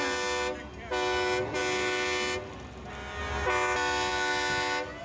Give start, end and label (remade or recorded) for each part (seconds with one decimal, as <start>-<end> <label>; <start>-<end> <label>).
0.0-5.0 recorded